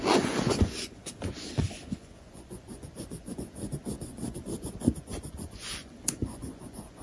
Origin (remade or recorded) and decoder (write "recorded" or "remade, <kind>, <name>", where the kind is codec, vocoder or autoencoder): remade, vocoder, Vocos